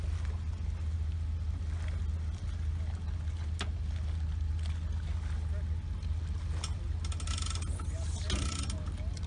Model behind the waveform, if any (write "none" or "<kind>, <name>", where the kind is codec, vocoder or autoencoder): none